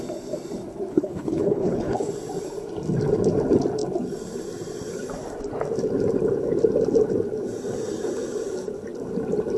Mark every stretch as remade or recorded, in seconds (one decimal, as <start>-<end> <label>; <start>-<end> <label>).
0.0-0.9 recorded; 0.9-2.1 remade; 2.1-9.6 recorded

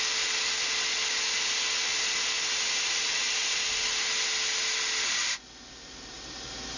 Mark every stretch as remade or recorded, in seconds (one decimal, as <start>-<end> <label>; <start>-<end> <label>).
0.0-6.8 recorded